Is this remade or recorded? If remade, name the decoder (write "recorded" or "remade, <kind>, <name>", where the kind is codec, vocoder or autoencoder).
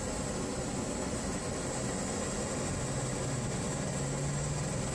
recorded